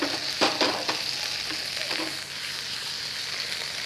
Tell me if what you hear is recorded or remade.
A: recorded